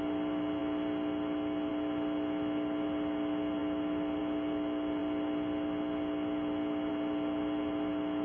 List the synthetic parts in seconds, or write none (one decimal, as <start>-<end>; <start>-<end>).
none